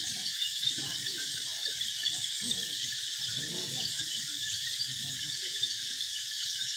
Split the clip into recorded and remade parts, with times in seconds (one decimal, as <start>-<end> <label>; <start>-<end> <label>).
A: 0.0-2.9 remade; 2.9-3.5 recorded; 3.5-6.8 remade